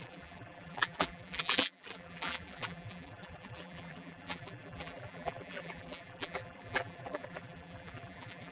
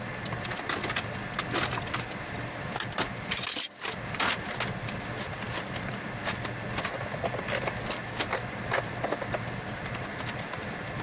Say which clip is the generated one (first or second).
first